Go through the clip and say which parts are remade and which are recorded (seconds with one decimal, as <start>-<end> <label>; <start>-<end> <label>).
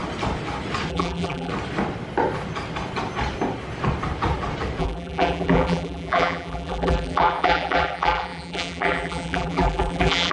0.0-0.9 recorded; 0.9-1.5 remade; 1.5-4.8 recorded; 4.8-10.3 remade